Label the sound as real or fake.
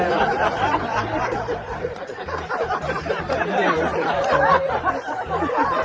fake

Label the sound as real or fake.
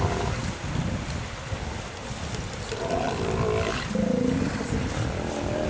real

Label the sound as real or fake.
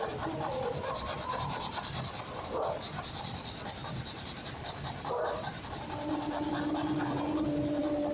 fake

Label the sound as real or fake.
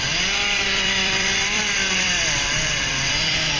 fake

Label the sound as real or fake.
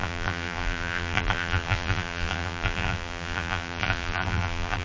fake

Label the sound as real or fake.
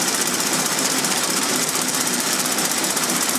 fake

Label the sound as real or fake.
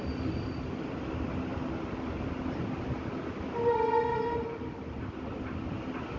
real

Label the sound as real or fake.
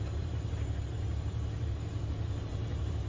fake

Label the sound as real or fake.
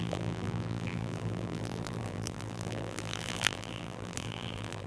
fake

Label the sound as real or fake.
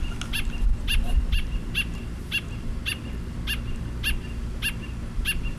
real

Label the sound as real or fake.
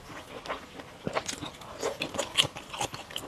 real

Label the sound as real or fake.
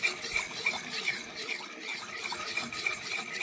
fake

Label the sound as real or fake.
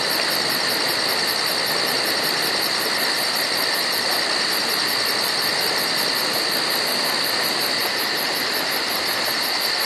real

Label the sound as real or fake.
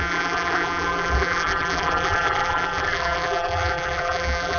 fake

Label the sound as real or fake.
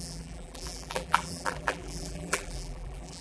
fake